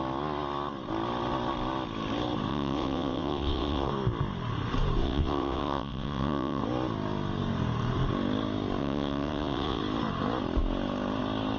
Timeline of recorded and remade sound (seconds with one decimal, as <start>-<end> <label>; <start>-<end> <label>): 0.0-2.5 recorded; 2.5-3.9 remade; 3.9-5.0 recorded; 5.0-6.6 remade; 6.6-8.8 recorded; 8.8-9.8 remade; 9.8-11.6 recorded